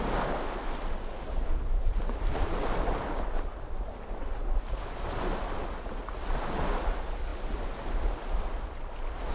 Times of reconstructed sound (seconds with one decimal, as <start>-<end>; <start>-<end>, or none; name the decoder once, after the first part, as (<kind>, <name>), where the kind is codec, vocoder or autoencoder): none